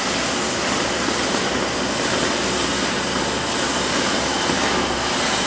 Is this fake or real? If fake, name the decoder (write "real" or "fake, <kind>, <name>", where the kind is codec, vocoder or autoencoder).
real